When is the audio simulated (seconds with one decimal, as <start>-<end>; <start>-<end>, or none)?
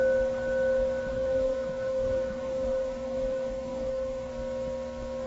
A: 1.1-4.3